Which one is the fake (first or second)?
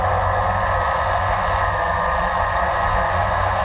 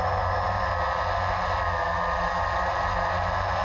first